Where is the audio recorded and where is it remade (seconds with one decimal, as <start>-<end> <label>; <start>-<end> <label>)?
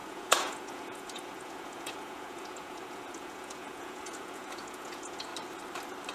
0.0-5.3 remade; 5.3-6.1 recorded